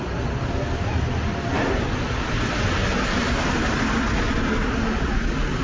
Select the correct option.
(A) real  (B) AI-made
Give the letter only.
A